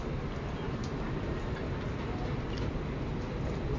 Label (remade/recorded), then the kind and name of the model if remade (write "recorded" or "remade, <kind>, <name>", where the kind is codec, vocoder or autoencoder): recorded